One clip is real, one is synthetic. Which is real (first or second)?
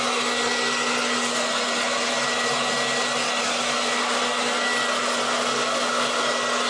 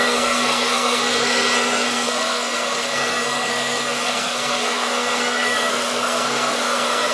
first